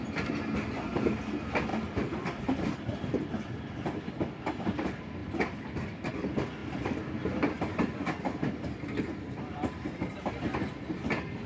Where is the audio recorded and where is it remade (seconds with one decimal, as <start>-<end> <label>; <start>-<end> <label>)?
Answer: 0.0-1.7 recorded; 1.7-4.1 remade; 4.1-5.2 recorded; 5.2-6.1 remade; 6.1-6.6 recorded; 6.6-10.4 remade; 10.4-11.5 recorded